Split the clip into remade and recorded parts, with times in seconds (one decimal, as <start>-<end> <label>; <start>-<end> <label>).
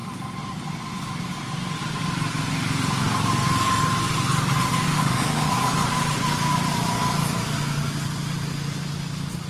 0.0-4.9 recorded; 4.9-5.5 remade; 5.5-9.5 recorded